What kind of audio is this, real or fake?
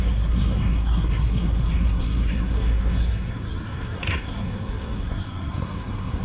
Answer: fake